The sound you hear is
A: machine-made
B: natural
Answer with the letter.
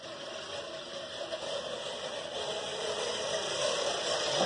B